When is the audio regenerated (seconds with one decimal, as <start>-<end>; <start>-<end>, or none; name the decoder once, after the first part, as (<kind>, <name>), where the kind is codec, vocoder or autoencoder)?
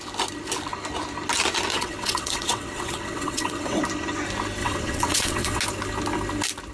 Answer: 1.7-3.8 (vocoder, WaveNeXt); 4.6-5.6